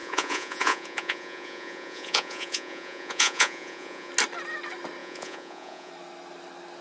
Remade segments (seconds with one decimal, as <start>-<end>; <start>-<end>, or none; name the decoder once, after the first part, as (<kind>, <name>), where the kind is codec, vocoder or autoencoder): 0.0-4.1 (vocoder, Vocos); 5.0-5.9